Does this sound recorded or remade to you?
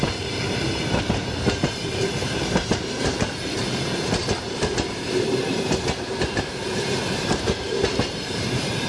remade